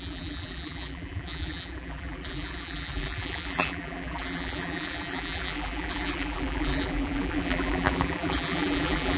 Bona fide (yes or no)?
no